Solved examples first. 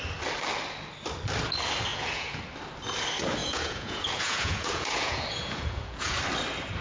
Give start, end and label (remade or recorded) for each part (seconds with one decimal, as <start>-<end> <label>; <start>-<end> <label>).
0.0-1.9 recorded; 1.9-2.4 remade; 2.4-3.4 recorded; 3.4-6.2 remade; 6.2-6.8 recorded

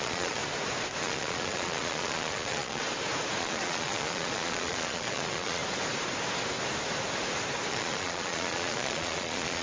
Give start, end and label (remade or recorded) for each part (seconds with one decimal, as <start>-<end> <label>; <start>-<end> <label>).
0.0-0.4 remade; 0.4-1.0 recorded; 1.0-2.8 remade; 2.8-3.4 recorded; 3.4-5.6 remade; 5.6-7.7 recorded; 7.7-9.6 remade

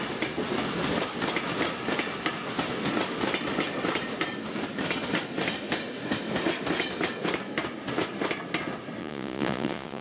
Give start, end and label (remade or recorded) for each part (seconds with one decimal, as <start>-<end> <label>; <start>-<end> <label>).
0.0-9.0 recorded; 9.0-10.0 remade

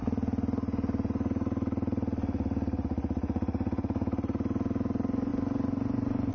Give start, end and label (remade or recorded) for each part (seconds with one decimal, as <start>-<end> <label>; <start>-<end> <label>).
0.0-6.3 recorded